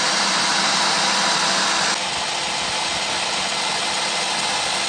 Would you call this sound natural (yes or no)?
yes